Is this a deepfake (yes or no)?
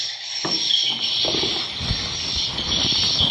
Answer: no